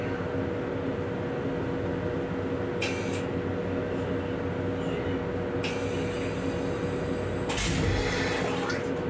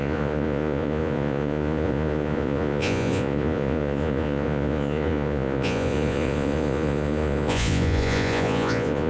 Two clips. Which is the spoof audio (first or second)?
second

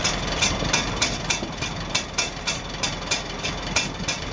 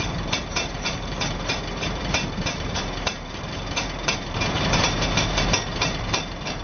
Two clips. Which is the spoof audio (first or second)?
second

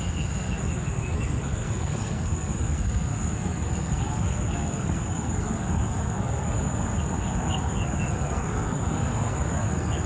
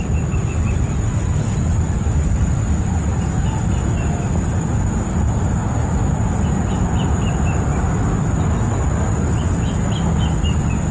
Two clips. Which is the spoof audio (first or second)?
first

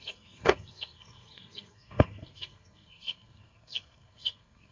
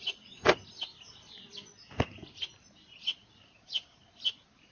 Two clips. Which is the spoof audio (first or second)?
first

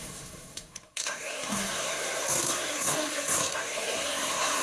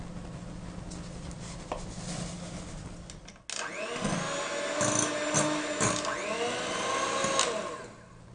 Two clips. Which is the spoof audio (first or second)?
first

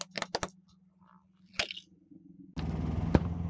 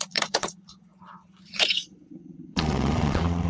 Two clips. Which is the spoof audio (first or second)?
second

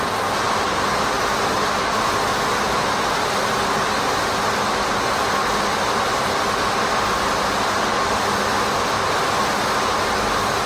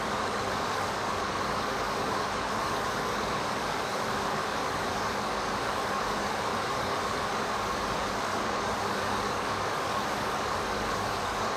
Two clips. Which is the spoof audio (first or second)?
second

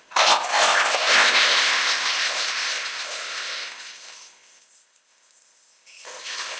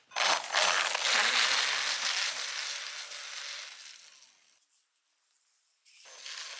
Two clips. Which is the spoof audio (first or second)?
first